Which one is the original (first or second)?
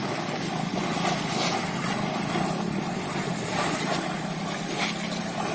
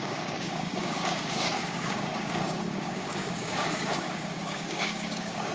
first